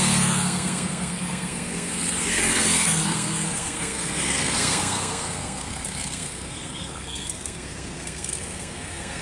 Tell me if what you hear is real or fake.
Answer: fake